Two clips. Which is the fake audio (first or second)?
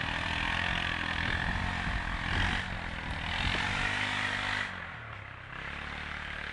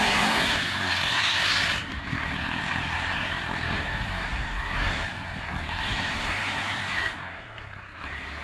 second